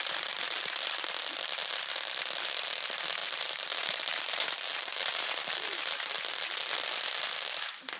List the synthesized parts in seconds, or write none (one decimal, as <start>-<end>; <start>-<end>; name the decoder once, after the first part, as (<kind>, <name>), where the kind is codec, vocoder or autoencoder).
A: 3.2-6.1 (vocoder, BigVGAN v2)